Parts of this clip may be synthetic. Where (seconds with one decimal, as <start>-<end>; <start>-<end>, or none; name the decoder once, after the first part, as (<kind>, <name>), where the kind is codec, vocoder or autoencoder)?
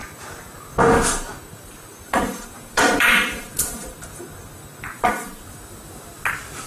1.3-4.9 (vocoder, BigVGAN v2)